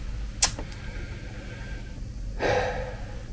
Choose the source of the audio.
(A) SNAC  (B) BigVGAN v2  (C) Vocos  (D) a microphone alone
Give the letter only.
D